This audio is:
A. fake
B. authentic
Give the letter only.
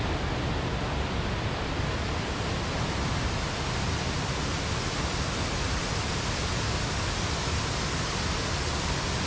B